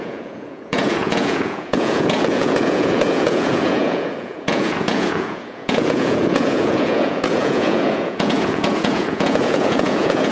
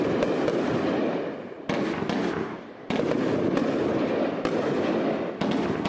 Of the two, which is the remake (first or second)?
first